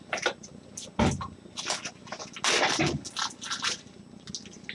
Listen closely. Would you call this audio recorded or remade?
recorded